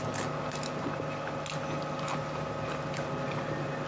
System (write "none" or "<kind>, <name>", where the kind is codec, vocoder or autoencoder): none